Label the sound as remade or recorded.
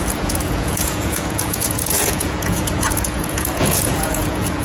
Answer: remade